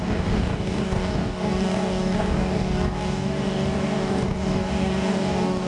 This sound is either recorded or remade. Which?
remade